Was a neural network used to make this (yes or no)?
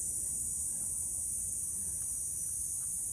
no